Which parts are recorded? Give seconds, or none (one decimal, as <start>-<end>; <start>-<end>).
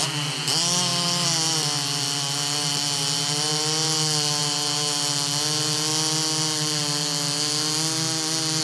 0.0-8.6